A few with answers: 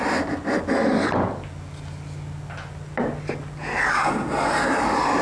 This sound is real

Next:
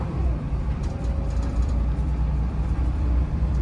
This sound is fake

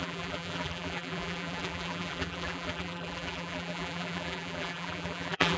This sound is fake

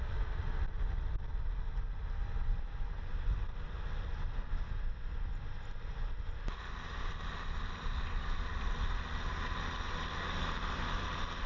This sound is real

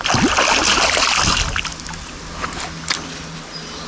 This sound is real